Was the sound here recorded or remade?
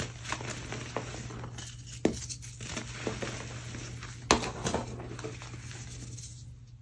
recorded